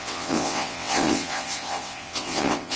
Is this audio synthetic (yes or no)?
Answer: yes